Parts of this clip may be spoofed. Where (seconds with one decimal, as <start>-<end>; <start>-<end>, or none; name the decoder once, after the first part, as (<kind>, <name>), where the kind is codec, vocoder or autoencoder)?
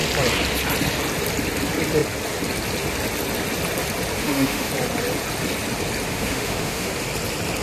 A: 4.2-4.7 (autoencoder, DAC-VAE); 6.1-6.9